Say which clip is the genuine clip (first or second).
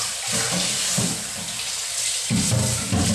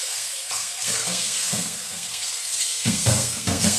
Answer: first